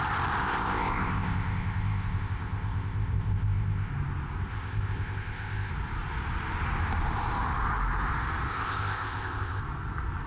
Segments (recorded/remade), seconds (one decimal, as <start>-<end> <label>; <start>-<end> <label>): 0.0-0.4 recorded; 0.4-3.9 remade; 3.9-4.5 recorded; 4.5-5.7 remade; 5.7-8.5 recorded; 8.5-9.6 remade; 9.6-10.3 recorded